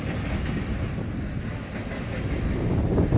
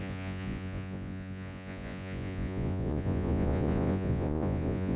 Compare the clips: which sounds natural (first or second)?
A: first